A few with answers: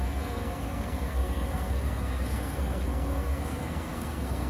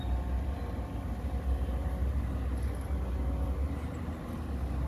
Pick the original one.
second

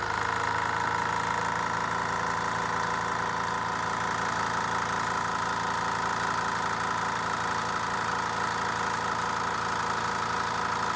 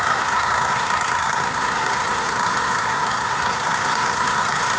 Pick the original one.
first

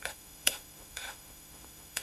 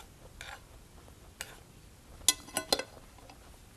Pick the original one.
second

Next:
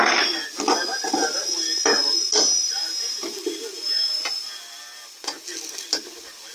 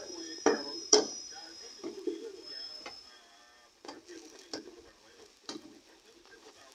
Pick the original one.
first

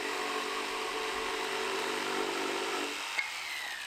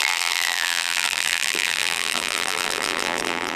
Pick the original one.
first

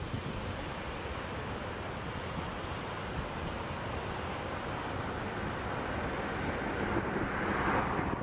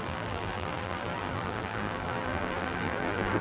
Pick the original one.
first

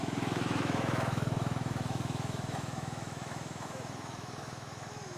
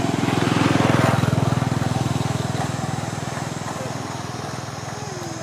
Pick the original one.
second